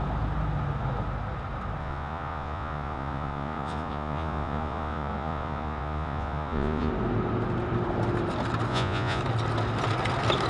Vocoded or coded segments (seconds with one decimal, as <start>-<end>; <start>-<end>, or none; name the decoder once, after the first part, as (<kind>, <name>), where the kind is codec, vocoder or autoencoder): 1.8-6.9 (vocoder, Vocos); 8.7-9.2